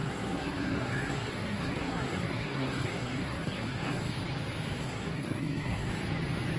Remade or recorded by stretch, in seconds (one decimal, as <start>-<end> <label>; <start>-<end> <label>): 0.0-4.0 remade; 4.0-4.8 recorded; 4.8-5.9 remade; 5.9-6.6 recorded